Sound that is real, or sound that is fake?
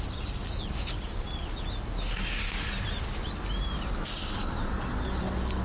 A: real